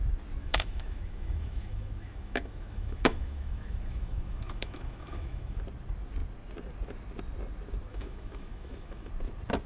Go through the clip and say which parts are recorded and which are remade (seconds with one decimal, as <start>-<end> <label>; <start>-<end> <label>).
0.0-0.4 recorded; 0.4-5.6 remade; 5.6-7.9 recorded; 7.9-9.1 remade; 9.1-9.7 recorded